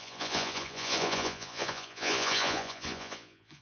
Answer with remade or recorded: remade